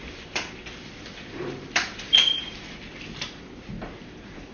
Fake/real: fake